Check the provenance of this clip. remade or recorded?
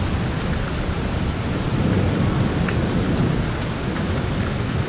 recorded